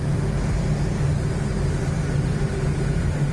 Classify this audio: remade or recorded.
recorded